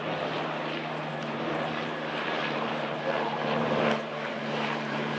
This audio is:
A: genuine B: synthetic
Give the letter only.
B